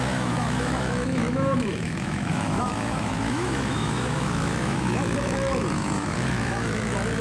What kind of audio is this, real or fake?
fake